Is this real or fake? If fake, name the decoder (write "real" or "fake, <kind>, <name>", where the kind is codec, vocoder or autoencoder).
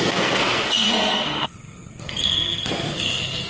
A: fake, codec, SNAC